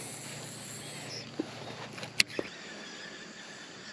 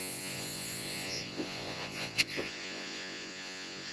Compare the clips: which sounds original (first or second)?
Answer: first